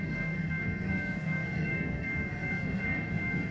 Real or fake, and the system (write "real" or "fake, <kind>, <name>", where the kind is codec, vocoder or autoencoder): fake, codec, SNAC